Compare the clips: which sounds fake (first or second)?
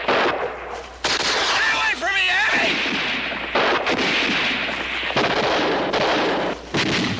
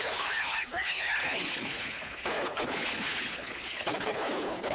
second